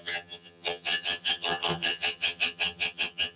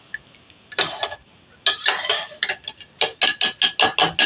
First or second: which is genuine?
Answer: second